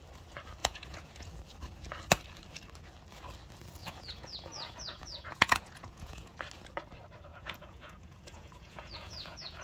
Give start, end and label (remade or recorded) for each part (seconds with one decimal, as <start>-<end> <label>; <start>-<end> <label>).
0.0-0.6 recorded; 0.6-1.3 remade; 1.3-3.8 recorded; 3.8-6.4 remade; 6.4-7.3 recorded; 7.3-9.6 remade